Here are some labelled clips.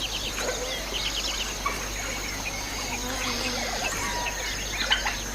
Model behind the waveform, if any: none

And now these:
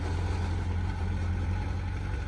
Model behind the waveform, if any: none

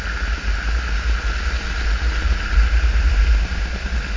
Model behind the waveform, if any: none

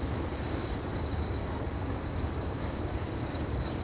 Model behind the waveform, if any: codec, DAC